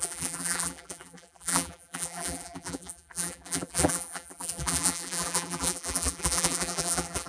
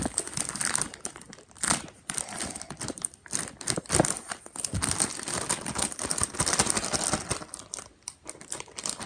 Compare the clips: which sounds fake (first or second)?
first